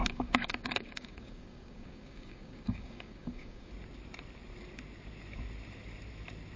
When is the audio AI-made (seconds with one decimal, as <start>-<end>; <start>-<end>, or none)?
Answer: 0.0-3.7